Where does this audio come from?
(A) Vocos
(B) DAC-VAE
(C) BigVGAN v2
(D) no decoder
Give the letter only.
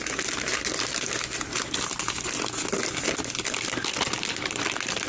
D